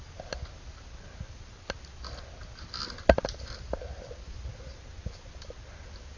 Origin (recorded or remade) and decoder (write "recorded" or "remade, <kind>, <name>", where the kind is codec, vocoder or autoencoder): recorded